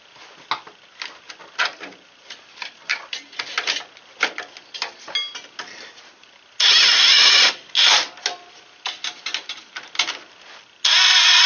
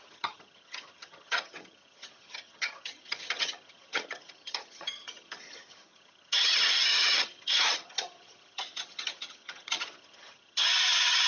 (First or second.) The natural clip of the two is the first